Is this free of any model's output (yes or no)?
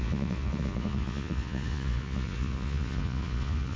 no